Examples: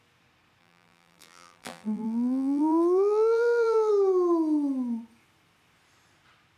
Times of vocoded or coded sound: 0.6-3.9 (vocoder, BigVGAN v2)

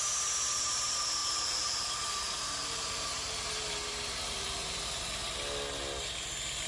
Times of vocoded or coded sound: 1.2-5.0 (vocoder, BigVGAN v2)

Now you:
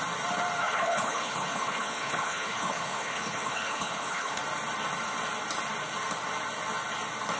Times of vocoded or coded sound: 0.6-4.4 (codec, HILCodec)